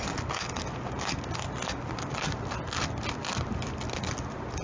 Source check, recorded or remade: recorded